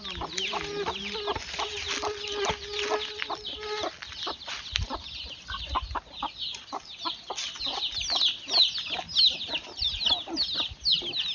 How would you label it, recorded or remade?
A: recorded